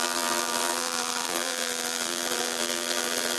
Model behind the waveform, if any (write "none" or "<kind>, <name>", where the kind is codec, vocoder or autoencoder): vocoder, BigVGAN v2